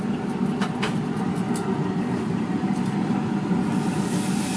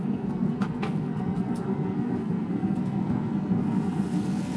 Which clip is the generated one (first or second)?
second